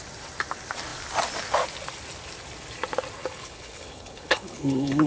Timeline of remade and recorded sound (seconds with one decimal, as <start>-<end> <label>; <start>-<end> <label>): 0.0-3.2 recorded; 3.2-5.1 remade